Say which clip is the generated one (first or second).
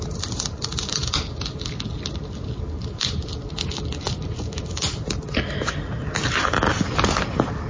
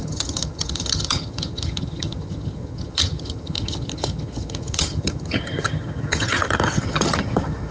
second